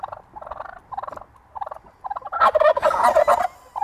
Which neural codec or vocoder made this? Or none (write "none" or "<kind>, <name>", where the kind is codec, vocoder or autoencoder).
none